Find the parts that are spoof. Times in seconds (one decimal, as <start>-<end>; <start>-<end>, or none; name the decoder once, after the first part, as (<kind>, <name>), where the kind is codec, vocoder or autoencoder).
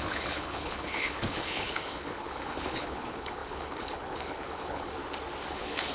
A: 0.0-5.0 (codec, HILCodec); 5.5-5.9